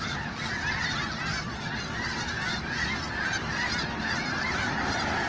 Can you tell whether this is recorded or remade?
recorded